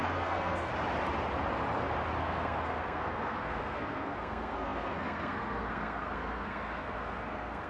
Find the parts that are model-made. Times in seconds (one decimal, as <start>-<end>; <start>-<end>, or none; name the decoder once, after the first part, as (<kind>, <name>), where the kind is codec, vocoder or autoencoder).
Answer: 0.0-0.7 (codec, SNAC); 2.2-7.7